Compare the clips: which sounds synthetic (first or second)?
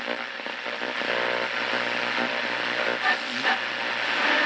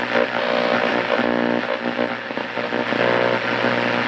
first